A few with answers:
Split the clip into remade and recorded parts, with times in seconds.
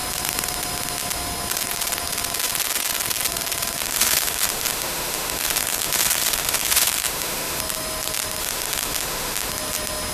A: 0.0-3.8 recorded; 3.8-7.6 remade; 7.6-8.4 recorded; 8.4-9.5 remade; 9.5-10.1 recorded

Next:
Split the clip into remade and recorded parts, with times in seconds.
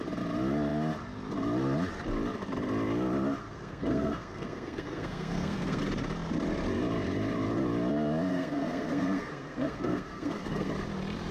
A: 0.0-3.4 recorded; 3.4-5.8 remade; 5.8-8.3 recorded; 8.3-10.7 remade; 10.7-11.3 recorded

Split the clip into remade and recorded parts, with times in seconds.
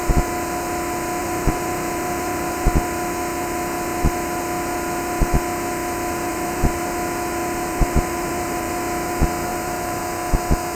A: 0.0-1.2 recorded; 1.2-2.7 remade; 2.7-6.3 recorded; 6.3-6.8 remade; 6.8-7.4 recorded; 7.4-8.7 remade; 8.7-9.5 recorded; 9.5-10.0 remade; 10.0-10.7 recorded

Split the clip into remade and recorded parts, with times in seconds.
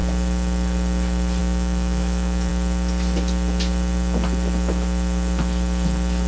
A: 0.0-1.4 recorded; 1.4-2.5 remade; 2.5-6.3 recorded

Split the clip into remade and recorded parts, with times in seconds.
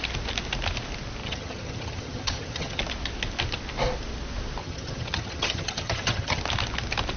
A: 0.0-1.2 recorded; 1.2-2.8 remade; 2.8-4.6 recorded; 4.6-6.4 remade; 6.4-7.2 recorded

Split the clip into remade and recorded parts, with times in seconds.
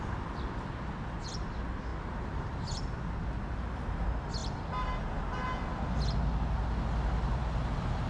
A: 0.0-8.1 recorded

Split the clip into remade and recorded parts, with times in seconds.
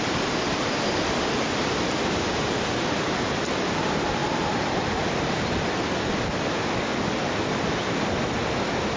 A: 0.0-9.0 recorded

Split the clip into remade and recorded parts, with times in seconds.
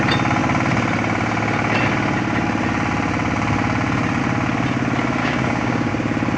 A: 0.0-5.2 recorded; 5.2-5.9 remade; 5.9-6.4 recorded